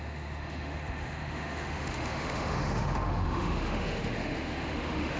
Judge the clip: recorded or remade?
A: remade